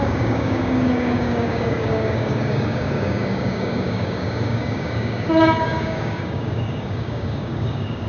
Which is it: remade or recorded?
remade